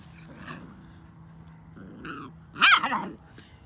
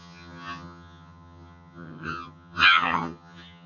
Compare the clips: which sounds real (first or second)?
first